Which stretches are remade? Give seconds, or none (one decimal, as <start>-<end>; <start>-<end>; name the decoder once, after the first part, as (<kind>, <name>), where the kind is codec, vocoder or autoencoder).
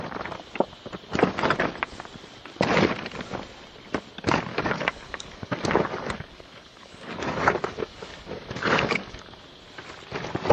4.5-9.4 (codec, DAC)